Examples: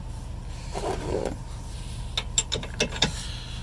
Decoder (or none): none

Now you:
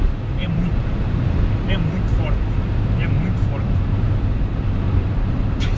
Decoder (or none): vocoder, BigVGAN v2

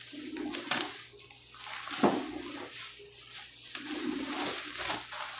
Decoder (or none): none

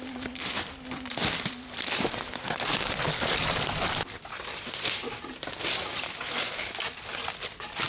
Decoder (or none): vocoder, BigVGAN v2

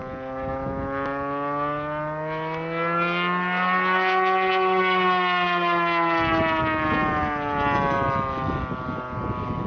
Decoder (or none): none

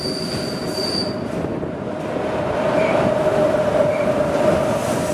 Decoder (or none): none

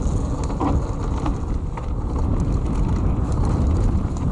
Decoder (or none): none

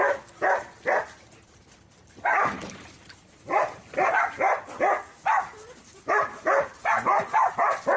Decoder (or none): vocoder, BigVGAN v2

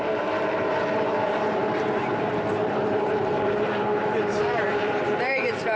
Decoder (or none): vocoder, BigVGAN v2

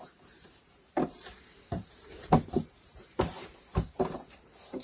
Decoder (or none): vocoder, BigVGAN v2